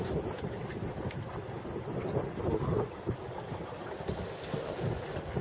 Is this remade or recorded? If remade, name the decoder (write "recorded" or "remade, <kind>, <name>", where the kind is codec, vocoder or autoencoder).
recorded